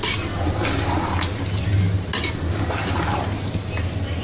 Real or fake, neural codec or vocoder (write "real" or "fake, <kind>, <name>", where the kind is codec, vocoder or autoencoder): real